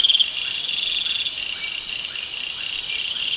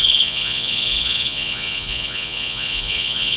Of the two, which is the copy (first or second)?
second